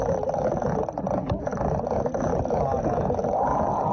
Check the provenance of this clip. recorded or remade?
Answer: recorded